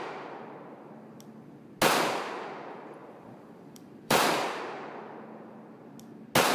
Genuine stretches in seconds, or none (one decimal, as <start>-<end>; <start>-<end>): 0.0-3.0; 4.6-6.5